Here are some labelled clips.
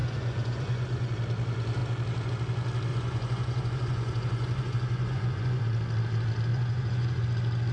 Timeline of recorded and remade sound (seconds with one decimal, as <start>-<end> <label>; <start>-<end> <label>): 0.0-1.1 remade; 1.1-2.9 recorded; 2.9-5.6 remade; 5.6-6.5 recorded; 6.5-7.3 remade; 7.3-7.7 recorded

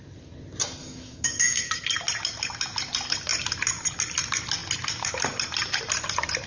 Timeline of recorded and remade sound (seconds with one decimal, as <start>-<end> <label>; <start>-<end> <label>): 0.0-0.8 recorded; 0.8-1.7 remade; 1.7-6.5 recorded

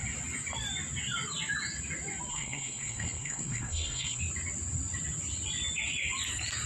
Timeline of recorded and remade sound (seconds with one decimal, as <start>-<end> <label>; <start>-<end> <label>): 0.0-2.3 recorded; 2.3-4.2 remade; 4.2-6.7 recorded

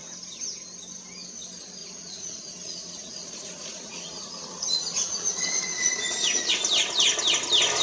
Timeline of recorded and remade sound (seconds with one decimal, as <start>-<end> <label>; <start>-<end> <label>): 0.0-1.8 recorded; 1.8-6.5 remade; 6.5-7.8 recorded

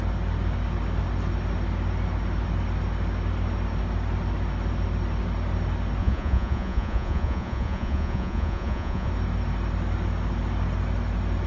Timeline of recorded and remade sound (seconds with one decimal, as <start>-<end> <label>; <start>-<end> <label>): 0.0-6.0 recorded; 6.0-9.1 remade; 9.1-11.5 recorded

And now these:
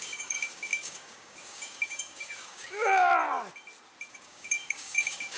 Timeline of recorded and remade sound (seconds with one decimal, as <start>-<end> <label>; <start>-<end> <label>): 0.0-3.1 remade; 3.1-4.1 recorded; 4.1-5.4 remade

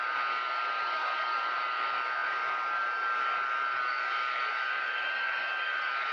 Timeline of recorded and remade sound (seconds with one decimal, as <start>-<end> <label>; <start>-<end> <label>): 0.0-6.1 remade